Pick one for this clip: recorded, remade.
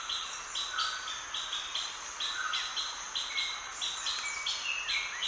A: recorded